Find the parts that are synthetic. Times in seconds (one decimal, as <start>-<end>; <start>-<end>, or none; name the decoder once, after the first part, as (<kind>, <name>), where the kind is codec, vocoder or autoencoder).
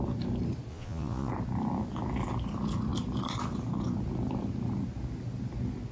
0.7-1.3 (vocoder, Vocos)